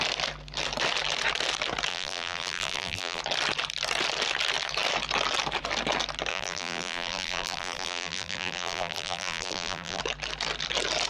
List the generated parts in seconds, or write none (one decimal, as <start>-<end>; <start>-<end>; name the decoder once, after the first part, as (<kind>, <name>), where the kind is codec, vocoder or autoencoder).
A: 1.9-3.2 (vocoder, BigVGAN v2); 6.3-10.0